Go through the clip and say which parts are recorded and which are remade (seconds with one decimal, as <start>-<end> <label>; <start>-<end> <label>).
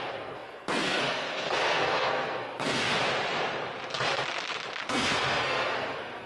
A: 0.0-2.8 remade; 2.8-4.9 recorded; 4.9-6.3 remade